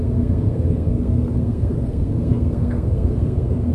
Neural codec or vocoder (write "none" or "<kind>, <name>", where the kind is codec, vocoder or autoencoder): codec, SNAC